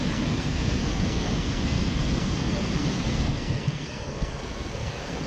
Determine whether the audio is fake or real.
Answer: fake